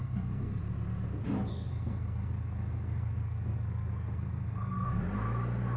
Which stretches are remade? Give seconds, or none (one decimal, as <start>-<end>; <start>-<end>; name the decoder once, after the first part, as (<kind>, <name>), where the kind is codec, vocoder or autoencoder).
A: 0.0-0.6 (codec, SNAC); 1.5-5.0